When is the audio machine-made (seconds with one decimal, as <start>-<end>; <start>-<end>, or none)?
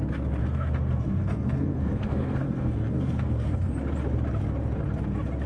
0.4-3.7